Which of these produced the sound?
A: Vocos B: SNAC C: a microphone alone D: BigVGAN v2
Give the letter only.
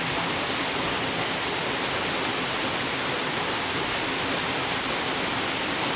C